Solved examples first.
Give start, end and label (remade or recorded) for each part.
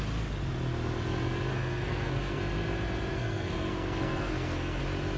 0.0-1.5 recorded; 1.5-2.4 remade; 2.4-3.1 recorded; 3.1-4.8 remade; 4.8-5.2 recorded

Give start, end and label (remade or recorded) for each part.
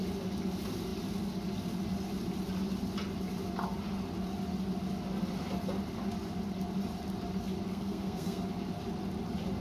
0.0-7.7 recorded; 7.7-8.4 remade; 8.4-9.6 recorded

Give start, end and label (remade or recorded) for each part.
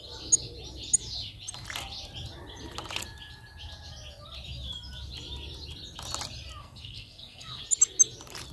0.0-6.6 recorded; 6.6-7.6 remade; 7.6-8.5 recorded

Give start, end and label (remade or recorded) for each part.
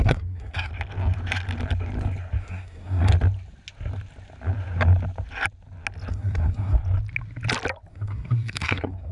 0.0-0.7 remade; 0.7-2.4 recorded; 2.4-3.1 remade; 3.1-6.1 recorded; 6.1-6.8 remade; 6.8-7.9 recorded; 7.9-9.1 remade